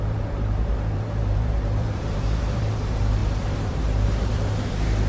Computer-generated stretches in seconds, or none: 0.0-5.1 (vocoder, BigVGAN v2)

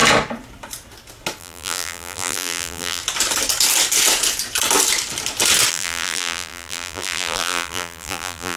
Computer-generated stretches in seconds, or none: 1.4-3.0 (vocoder, BigVGAN v2); 5.7-8.6

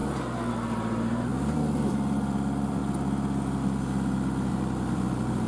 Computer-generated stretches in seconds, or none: 0.5-1.3 (vocoder, BigVGAN v2); 1.9-2.8; 4.5-5.5

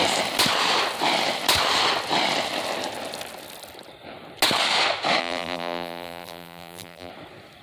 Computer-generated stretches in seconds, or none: 5.2-7.1 (vocoder, BigVGAN v2)

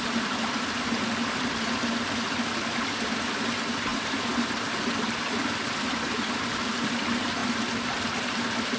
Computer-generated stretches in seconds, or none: 0.0-7.4 (vocoder, BigVGAN v2); 8.0-8.8

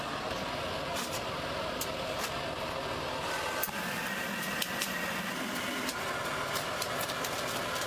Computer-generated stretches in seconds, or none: 0.9-2.4 (vocoder, BigVGAN v2)